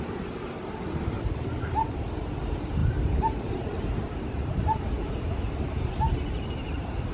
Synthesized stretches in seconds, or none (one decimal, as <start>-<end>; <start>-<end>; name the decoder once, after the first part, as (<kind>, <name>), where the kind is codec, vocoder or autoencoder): 0.0-1.8 (vocoder, BigVGAN v2); 2.4-7.1